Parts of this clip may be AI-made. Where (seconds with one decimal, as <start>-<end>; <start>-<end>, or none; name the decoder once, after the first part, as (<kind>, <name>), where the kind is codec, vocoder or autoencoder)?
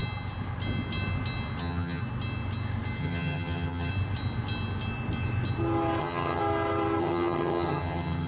1.6-2.0 (vocoder, HiFi-GAN); 3.0-3.9; 6.0-6.4; 7.0-8.3